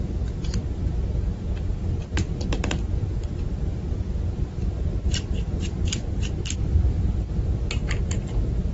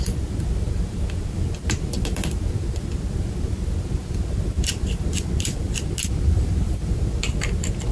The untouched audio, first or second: first